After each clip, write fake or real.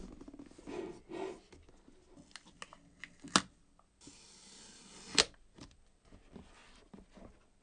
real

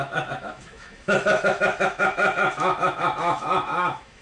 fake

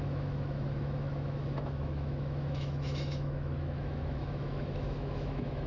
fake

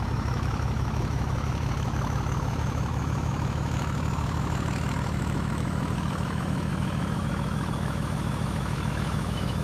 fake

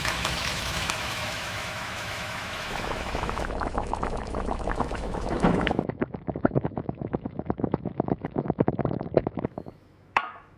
fake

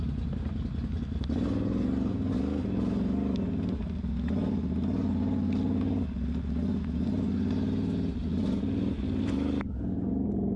real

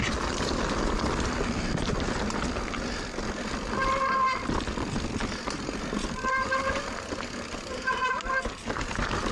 real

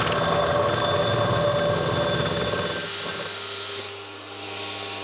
real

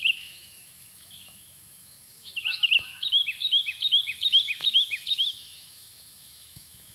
fake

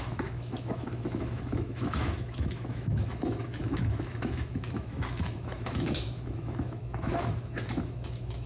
fake